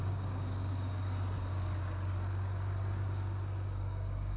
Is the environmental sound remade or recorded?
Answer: remade